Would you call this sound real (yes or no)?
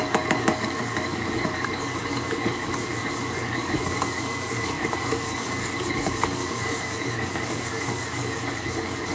no